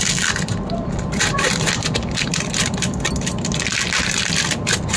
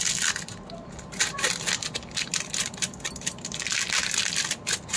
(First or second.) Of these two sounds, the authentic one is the second